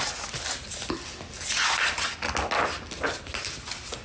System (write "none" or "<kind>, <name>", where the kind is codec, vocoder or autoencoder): none